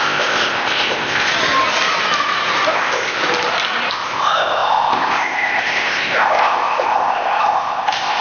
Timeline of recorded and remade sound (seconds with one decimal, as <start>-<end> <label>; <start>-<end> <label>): 0.0-1.3 remade; 1.3-2.7 recorded; 2.7-3.2 remade; 3.2-3.9 recorded; 3.9-8.2 remade